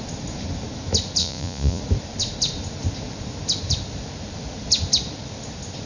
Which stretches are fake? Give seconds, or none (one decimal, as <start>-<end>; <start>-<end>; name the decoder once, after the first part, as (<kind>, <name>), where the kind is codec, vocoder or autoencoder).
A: 1.2-1.8 (vocoder, Vocos)